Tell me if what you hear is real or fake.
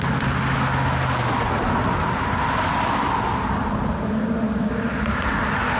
real